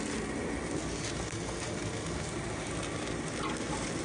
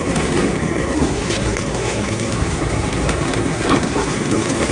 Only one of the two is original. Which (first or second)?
first